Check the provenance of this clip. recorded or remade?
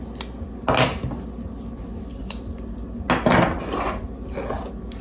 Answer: recorded